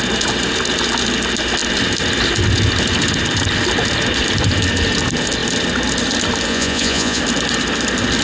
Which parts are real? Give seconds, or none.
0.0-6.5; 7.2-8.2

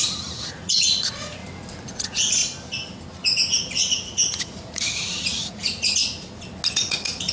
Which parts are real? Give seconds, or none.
1.4-2.0; 2.4-3.6; 6.0-6.7

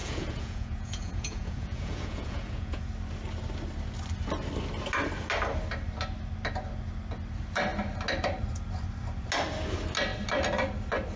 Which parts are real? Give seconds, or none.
2.9-11.2

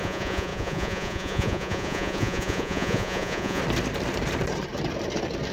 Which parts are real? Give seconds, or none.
3.6-5.5

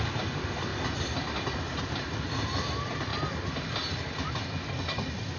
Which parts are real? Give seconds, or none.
0.0-5.4